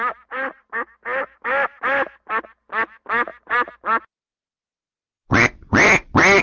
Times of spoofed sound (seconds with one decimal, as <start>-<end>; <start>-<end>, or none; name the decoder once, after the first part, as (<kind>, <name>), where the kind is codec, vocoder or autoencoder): none